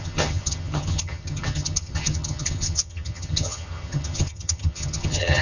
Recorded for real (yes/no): no